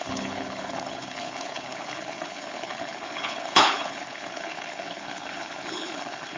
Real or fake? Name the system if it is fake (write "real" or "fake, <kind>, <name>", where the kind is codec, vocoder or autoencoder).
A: fake, codec, HILCodec